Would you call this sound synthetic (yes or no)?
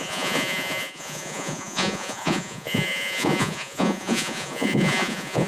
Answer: yes